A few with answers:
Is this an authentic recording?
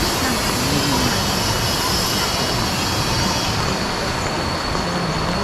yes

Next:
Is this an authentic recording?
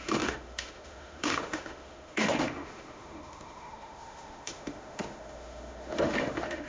no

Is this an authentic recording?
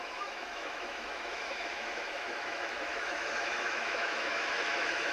no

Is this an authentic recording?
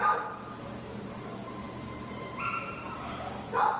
yes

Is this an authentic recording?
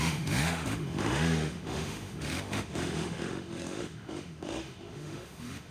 no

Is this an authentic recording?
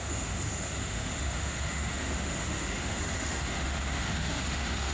no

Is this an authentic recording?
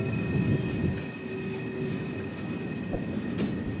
yes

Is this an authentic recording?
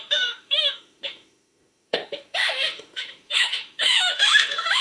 no